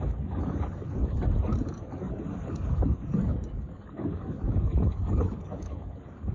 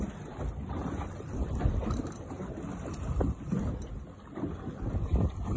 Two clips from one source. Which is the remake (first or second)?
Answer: first